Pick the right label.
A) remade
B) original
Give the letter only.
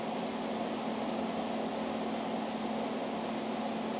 B